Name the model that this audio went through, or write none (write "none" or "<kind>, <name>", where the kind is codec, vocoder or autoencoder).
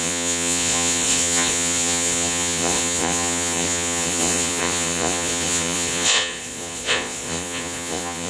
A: vocoder, Vocos